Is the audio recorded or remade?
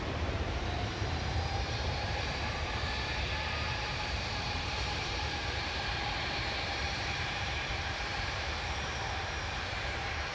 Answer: remade